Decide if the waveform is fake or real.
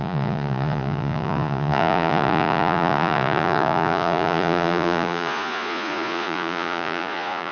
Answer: fake